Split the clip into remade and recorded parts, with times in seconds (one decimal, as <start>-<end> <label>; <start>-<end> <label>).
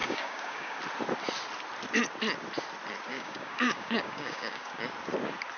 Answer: 0.0-0.8 remade; 0.8-3.1 recorded; 3.1-4.8 remade; 4.8-5.6 recorded